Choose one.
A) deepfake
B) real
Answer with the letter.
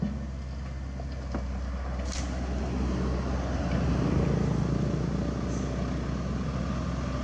B